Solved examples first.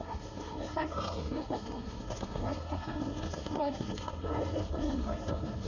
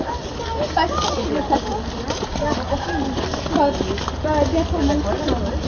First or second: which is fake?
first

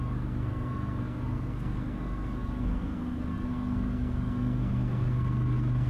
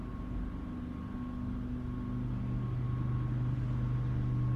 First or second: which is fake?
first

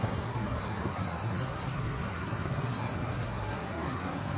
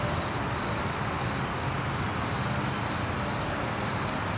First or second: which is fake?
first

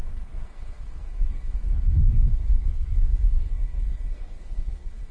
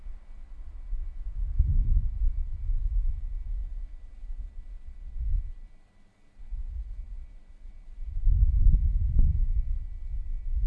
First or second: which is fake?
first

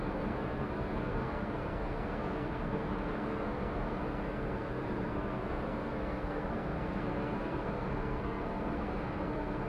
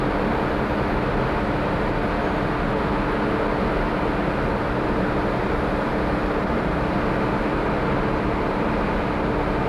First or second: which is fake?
first